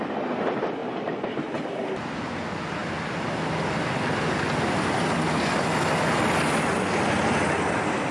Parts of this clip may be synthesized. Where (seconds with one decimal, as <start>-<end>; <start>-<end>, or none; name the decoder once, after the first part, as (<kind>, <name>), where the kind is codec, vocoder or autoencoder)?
none

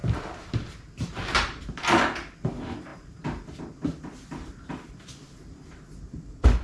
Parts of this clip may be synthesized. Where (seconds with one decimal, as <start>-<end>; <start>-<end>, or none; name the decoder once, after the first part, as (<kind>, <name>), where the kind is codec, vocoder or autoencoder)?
none

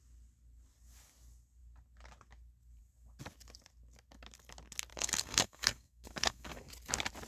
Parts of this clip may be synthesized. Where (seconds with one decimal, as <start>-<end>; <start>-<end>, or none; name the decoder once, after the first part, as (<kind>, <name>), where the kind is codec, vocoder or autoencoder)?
4.9-6.7 (codec, SNAC)

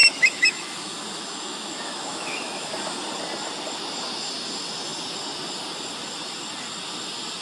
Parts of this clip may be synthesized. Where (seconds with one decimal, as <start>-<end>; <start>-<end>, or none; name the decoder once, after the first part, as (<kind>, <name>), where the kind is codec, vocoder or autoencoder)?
0.0-2.7 (autoencoder, DAC-VAE)

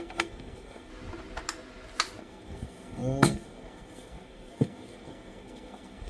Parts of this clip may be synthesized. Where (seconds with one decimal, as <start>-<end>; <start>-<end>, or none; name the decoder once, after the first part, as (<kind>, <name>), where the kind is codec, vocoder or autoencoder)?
0.0-0.9 (codec, SNAC); 2.2-6.1

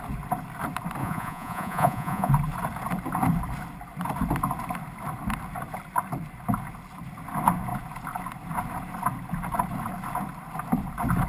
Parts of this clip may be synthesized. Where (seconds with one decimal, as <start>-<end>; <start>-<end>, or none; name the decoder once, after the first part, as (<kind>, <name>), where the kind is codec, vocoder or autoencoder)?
1.0-2.3 (vocoder, Vocos)